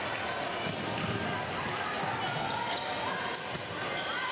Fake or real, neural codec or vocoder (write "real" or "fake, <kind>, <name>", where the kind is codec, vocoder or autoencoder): real